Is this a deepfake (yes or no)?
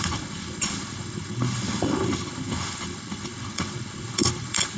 yes